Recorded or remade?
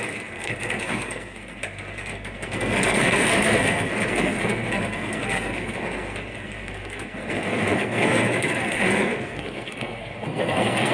remade